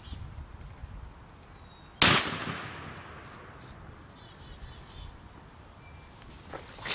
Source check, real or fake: real